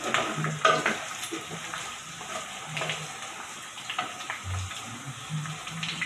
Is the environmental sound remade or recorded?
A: recorded